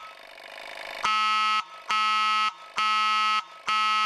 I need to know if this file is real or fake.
real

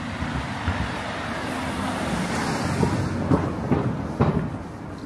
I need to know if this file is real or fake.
real